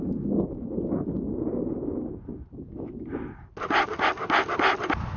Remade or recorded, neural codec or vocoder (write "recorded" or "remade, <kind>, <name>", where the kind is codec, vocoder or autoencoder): recorded